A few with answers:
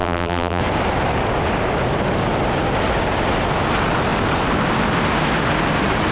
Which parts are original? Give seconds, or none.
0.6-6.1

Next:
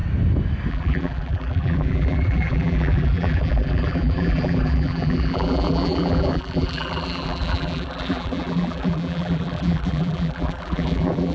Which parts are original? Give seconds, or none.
0.0-0.7